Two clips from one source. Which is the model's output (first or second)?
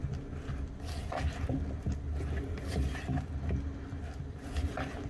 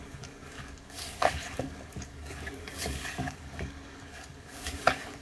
second